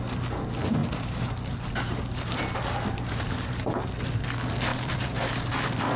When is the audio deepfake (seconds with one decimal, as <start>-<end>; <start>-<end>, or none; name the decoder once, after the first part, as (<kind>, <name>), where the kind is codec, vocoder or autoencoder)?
0.8-3.9 (vocoder, BigVGAN v2); 4.7-5.5